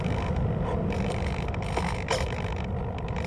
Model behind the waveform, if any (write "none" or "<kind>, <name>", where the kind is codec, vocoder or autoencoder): none